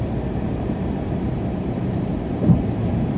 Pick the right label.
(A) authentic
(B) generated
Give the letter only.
B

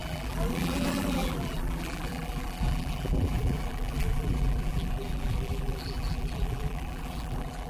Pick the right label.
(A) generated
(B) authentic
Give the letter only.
A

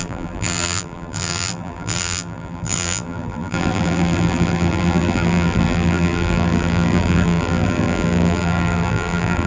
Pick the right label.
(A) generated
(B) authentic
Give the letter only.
A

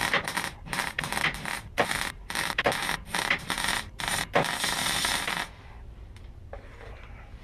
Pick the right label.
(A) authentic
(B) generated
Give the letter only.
B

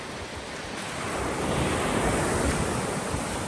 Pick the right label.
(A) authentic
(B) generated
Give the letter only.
A